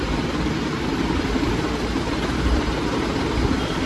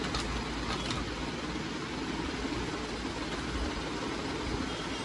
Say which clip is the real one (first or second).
second